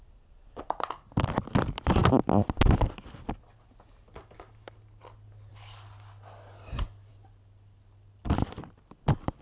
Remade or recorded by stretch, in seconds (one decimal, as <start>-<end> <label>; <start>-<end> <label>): 0.0-9.4 recorded